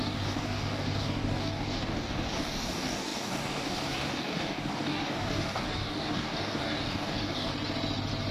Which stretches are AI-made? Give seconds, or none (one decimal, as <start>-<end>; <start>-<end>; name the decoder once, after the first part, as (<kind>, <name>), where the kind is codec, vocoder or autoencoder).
0.0-7.5 (codec, DAC)